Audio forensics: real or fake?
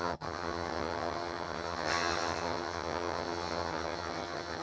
fake